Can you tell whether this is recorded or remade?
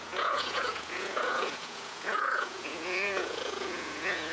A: remade